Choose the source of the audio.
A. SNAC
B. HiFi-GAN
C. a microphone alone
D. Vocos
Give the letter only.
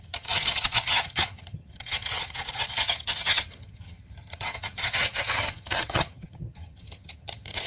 B